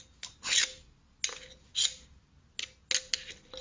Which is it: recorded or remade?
recorded